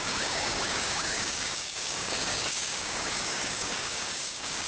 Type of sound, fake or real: fake